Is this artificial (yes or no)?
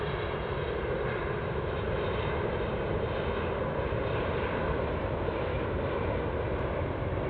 no